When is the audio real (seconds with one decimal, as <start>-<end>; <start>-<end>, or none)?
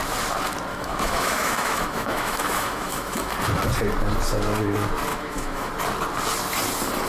0.0-0.7; 3.3-5.1; 5.7-7.1